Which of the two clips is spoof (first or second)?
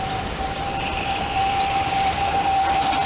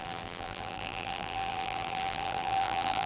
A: second